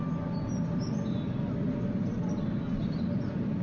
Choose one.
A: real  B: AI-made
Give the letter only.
A